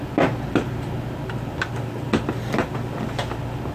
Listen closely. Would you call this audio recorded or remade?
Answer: recorded